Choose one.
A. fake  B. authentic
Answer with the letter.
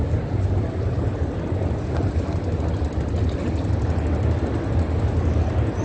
B